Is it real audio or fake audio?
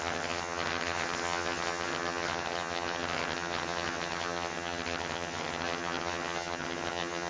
fake